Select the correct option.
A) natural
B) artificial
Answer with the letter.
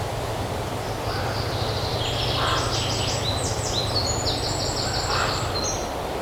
A